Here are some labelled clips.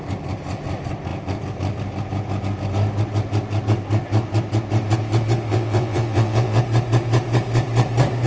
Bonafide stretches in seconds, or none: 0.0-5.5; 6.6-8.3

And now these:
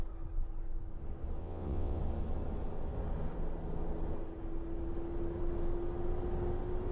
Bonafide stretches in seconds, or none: 0.0-1.4; 2.0-6.9

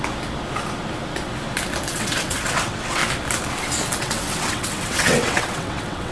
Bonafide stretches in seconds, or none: 0.0-1.9; 3.0-4.0

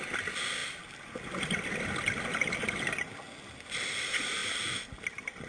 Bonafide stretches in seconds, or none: 0.0-5.5